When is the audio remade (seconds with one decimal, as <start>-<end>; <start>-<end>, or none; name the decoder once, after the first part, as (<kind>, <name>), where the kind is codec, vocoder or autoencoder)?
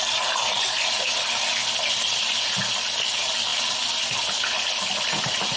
none